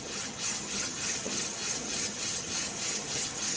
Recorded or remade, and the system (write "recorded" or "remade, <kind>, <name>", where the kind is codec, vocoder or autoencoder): remade, vocoder, HiFi-GAN